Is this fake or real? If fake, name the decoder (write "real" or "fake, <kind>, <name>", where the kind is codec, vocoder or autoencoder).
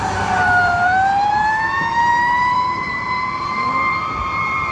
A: fake, vocoder, BigVGAN v2